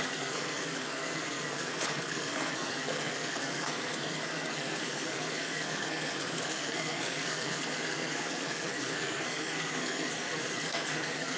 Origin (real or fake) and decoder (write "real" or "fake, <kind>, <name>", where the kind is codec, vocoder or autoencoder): fake, codec, SNAC